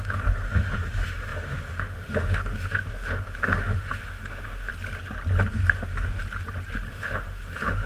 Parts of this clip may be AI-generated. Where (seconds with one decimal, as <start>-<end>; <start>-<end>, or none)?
0.0-4.7; 5.5-6.2; 6.9-7.9